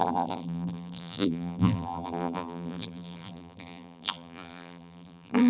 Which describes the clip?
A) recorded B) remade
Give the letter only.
B